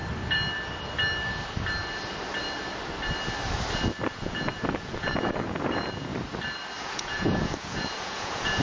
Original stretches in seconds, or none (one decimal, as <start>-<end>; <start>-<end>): 0.0-4.1; 6.1-6.8